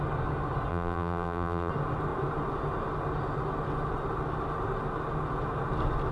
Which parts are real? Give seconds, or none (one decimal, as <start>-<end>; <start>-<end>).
0.0-0.7; 1.7-6.1